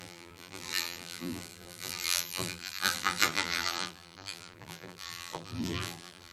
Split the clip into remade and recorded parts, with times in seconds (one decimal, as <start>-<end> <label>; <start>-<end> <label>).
0.0-6.3 remade